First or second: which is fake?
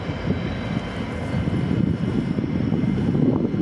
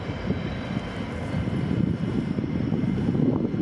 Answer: second